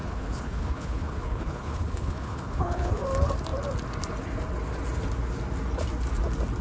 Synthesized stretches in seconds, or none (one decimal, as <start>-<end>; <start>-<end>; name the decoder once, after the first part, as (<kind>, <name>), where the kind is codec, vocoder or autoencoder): 0.0-3.0 (codec, HILCodec)